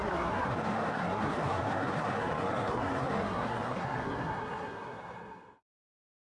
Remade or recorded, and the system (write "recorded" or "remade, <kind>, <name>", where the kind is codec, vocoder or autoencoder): remade, codec, SNAC